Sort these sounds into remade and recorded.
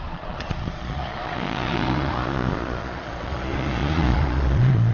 remade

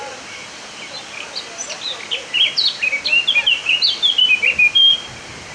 recorded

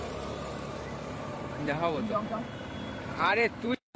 remade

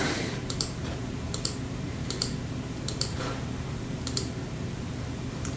remade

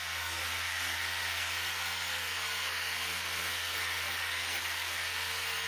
remade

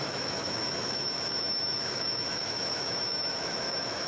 remade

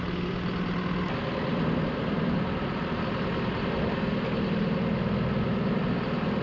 recorded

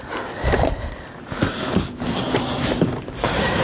remade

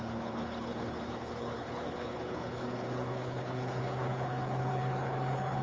remade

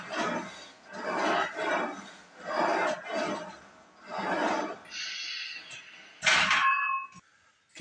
recorded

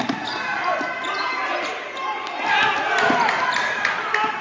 recorded